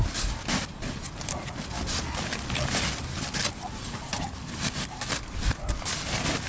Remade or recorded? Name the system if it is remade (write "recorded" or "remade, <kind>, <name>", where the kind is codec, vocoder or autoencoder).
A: recorded